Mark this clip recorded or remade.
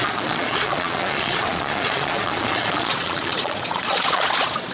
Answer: remade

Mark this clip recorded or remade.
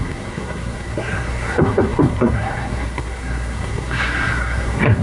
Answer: remade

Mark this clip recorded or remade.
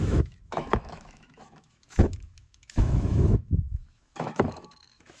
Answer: remade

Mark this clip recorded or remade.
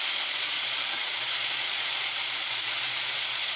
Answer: remade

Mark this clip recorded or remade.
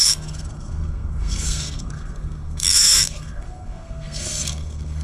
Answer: remade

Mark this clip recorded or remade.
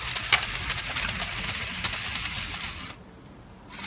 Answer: recorded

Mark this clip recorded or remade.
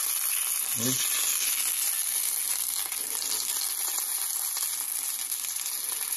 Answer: recorded